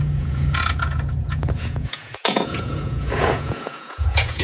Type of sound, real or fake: fake